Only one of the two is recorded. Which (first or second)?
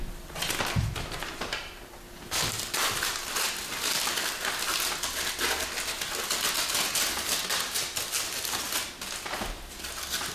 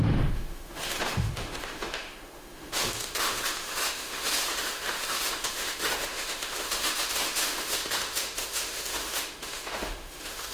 first